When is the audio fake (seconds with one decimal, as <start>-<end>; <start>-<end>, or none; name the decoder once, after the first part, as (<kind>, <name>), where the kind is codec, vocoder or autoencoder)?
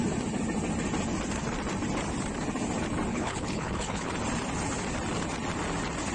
3.1-4.1 (codec, HILCodec)